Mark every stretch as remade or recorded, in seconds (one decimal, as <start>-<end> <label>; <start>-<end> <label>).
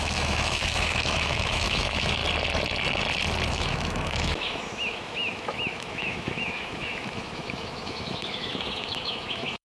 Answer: 0.0-2.2 remade; 2.2-3.5 recorded; 3.5-9.6 remade